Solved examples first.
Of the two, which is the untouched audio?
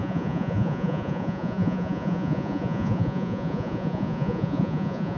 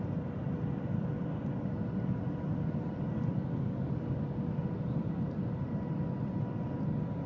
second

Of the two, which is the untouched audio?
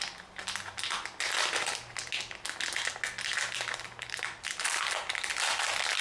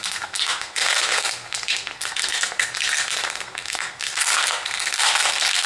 first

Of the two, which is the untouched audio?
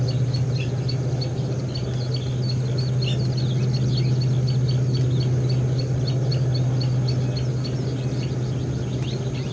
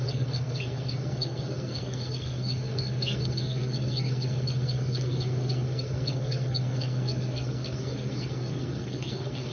first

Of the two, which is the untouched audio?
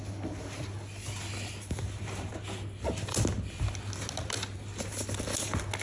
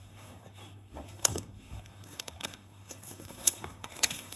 first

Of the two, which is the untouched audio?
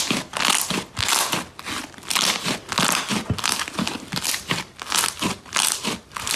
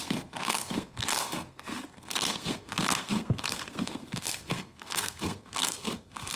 first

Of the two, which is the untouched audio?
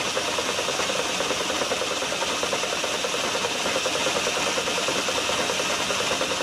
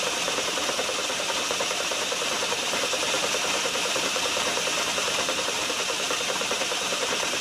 first